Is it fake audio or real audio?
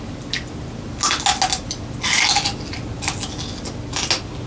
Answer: real